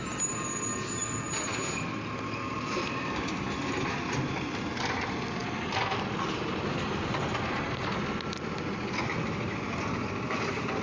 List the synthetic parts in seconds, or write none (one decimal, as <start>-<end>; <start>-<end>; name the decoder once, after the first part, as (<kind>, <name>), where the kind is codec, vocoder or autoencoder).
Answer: none